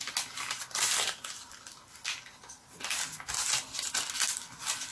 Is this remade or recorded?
recorded